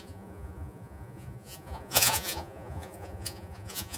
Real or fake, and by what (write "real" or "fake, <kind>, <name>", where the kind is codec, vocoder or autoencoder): fake, vocoder, Vocos